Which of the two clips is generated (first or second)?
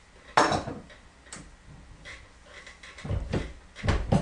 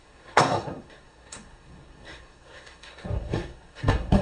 second